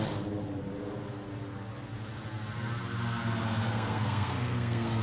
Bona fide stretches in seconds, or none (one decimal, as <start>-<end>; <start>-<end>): 0.0-3.7